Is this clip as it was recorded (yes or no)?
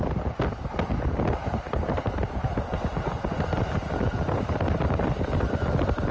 yes